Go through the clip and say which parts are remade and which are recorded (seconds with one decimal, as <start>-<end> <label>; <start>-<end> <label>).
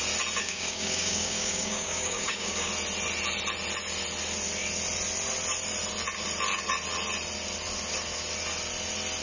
0.0-0.4 recorded; 0.4-2.7 remade; 2.7-9.2 recorded